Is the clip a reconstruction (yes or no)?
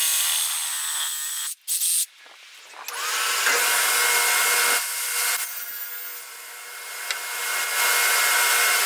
no